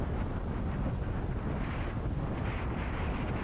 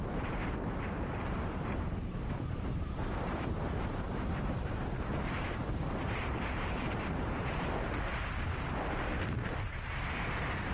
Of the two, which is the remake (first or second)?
second